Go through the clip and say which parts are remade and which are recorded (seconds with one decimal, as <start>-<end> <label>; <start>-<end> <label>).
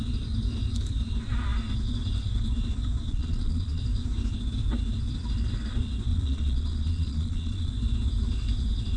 0.0-3.1 recorded; 3.1-3.8 remade; 3.8-6.1 recorded; 6.1-7.7 remade; 7.7-9.0 recorded